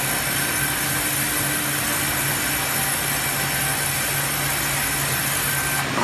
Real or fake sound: real